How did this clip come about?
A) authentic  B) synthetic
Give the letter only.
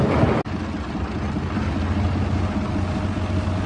A